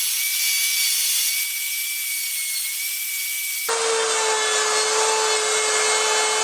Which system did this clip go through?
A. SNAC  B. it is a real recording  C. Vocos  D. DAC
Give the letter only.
B